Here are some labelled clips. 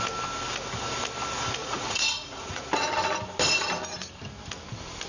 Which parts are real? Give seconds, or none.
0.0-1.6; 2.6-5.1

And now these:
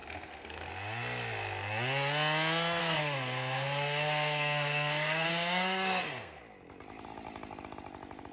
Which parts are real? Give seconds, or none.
0.7-2.8; 6.4-8.3

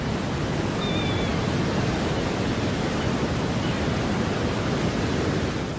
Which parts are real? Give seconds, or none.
0.0-1.3; 4.8-5.8

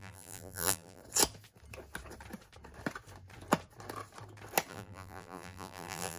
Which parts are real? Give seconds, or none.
1.0-4.7